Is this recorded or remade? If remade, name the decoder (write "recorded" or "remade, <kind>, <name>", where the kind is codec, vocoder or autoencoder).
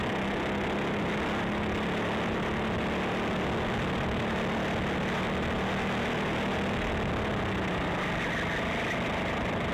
recorded